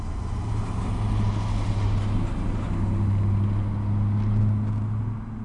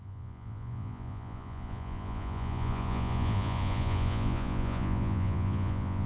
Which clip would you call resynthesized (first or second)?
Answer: second